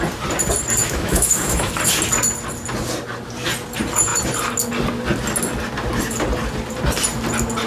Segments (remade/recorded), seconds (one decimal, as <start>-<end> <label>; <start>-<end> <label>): 0.0-0.8 recorded; 0.8-1.7 remade; 1.7-7.7 recorded

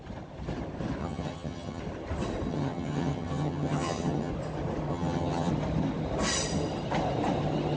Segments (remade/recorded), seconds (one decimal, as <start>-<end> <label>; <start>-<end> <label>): 0.0-1.0 recorded; 1.0-1.8 remade; 1.8-2.5 recorded; 2.5-4.3 remade; 4.3-4.9 recorded; 4.9-5.5 remade; 5.5-7.8 recorded